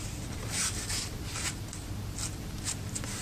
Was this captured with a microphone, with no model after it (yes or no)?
no